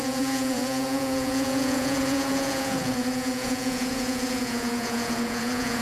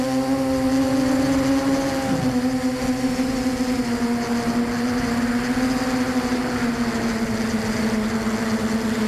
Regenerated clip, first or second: first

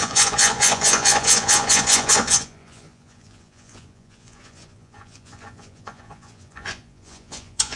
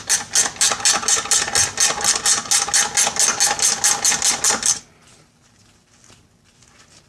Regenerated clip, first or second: first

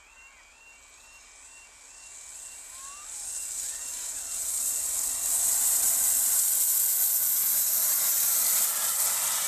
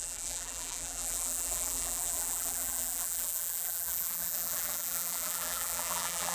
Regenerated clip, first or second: second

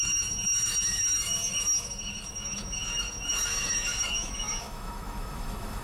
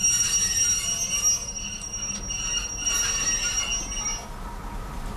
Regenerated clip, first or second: first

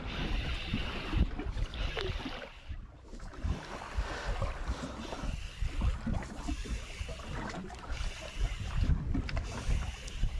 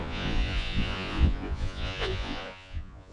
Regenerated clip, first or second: second